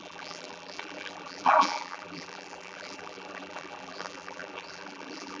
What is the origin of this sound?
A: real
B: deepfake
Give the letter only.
B